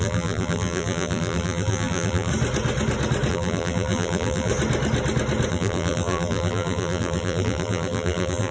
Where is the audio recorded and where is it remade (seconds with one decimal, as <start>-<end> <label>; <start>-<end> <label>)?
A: 0.0-2.3 remade; 2.3-3.3 recorded; 3.3-4.5 remade; 4.5-5.5 recorded; 5.5-8.5 remade